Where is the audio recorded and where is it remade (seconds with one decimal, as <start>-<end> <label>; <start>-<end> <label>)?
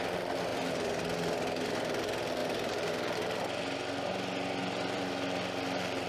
0.0-0.5 recorded; 0.5-1.0 remade; 1.0-2.4 recorded; 2.4-2.9 remade; 2.9-4.6 recorded; 4.6-5.1 remade; 5.1-6.1 recorded